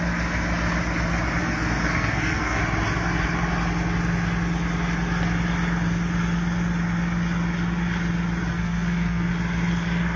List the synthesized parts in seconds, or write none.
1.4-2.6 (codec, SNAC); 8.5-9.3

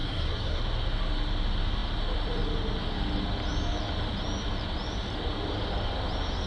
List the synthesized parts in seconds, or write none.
0.0-0.6 (codec, SNAC)